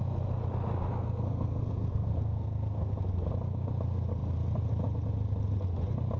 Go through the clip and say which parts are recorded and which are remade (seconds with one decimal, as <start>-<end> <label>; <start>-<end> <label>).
0.0-0.9 recorded; 0.9-2.9 remade; 2.9-6.2 recorded